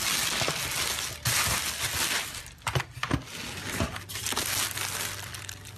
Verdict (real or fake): real